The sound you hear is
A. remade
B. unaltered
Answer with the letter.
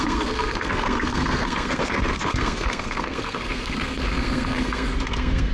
A